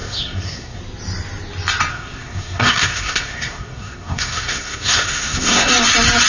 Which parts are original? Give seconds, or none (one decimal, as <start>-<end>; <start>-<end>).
0.8-1.9; 5.7-6.3